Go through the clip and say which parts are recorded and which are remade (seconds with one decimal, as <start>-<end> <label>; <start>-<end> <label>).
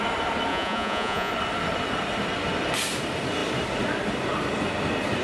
0.0-0.5 recorded; 0.5-1.3 remade; 1.3-5.2 recorded